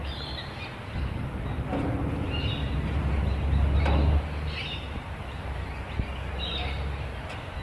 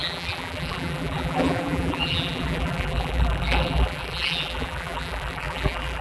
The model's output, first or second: second